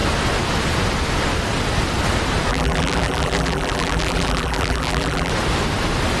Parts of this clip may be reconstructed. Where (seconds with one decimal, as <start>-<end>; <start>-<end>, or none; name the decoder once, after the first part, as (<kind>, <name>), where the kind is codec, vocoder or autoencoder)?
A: 2.5-5.3 (vocoder, BigVGAN v2)